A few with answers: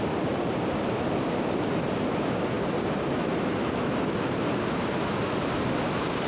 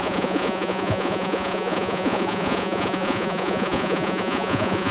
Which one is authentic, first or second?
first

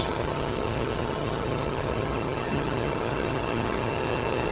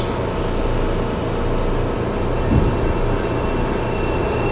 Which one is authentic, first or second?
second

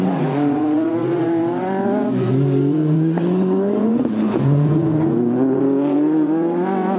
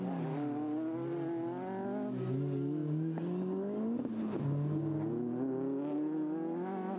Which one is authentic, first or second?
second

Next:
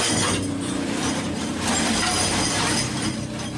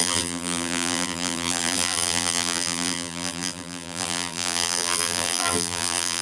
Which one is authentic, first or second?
first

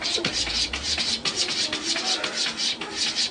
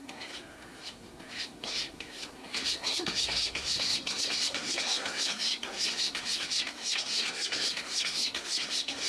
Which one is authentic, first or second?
first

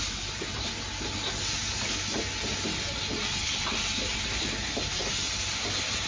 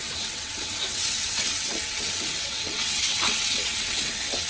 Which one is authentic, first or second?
first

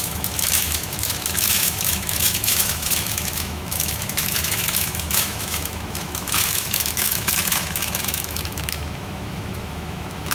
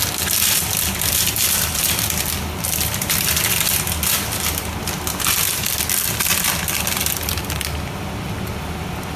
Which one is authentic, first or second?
second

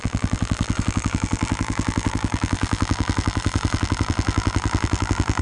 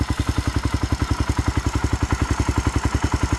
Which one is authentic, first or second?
second